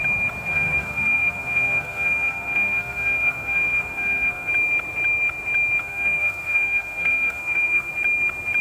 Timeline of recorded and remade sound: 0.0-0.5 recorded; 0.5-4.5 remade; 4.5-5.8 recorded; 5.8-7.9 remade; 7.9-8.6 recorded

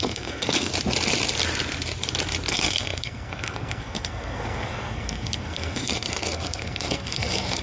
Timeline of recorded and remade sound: 0.0-0.7 remade; 0.7-2.5 recorded; 2.5-7.6 remade

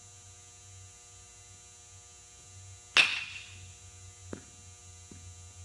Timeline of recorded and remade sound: 0.0-5.6 recorded

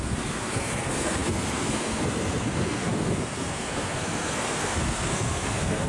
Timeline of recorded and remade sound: 0.0-5.9 remade

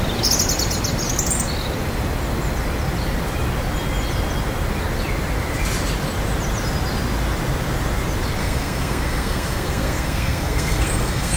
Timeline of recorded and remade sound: 0.0-8.4 recorded; 8.4-11.4 remade